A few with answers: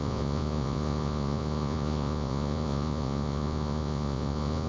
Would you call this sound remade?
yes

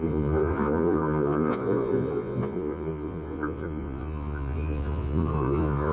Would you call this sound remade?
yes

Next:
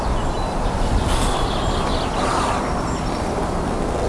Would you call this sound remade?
no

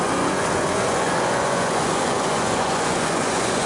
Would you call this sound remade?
yes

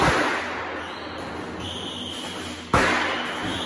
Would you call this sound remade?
no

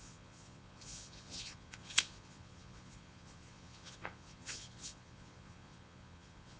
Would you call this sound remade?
yes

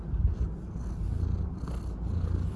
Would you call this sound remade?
no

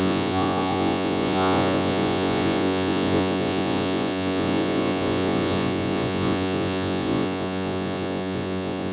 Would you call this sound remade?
yes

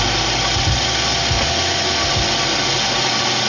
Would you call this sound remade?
no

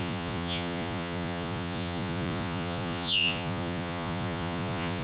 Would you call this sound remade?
yes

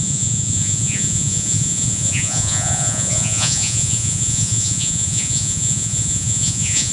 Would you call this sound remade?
yes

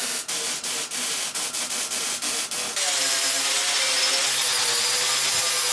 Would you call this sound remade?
no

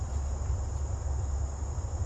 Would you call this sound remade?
no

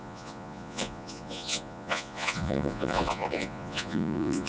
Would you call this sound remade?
yes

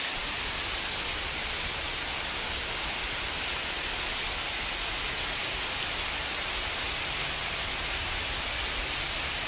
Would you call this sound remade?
no